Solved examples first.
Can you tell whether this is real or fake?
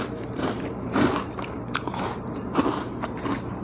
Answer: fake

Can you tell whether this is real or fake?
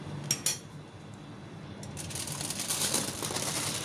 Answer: real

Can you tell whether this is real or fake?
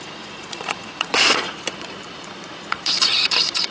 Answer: fake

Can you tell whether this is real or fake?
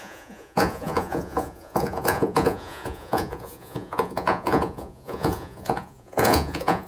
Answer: fake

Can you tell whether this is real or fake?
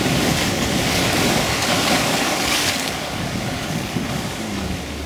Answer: fake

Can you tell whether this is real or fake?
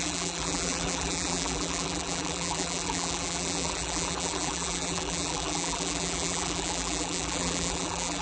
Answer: fake